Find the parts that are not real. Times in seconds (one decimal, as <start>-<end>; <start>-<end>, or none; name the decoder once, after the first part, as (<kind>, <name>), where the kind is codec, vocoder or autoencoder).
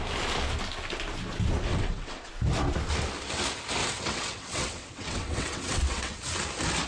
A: 1.7-2.3 (vocoder, WaveNeXt); 3.8-6.2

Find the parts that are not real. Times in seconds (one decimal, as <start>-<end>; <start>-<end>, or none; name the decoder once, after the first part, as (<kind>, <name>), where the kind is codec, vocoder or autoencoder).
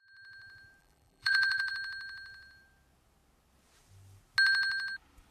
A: 0.8-1.7 (vocoder, BigVGAN v2)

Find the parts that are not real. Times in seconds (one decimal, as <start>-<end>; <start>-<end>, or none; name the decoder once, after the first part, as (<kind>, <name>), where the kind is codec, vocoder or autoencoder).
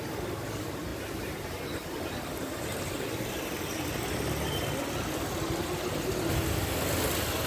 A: 0.9-2.8 (vocoder, BigVGAN v2)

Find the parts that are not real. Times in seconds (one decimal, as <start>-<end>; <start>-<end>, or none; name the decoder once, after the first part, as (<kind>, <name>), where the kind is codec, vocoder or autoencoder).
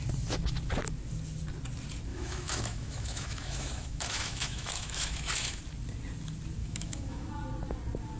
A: 2.1-5.6 (autoencoder, DAC-VAE); 6.6-7.3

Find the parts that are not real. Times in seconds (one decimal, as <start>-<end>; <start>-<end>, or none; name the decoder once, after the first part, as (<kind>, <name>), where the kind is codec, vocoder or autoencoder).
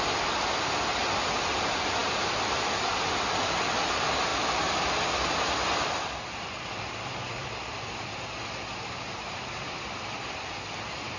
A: none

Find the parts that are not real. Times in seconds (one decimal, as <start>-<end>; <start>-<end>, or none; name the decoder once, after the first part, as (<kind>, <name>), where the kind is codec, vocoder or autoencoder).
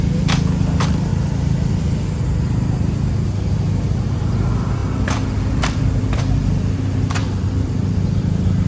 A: 1.1-1.7 (vocoder, BigVGAN v2); 4.8-6.8; 7.2-8.0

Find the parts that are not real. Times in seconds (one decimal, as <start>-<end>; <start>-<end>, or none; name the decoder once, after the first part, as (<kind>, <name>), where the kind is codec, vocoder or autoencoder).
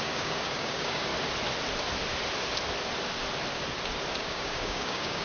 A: 0.0-1.1 (codec, DAC); 4.2-5.2